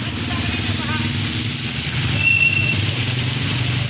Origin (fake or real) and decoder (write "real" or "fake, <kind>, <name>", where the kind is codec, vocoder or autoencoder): real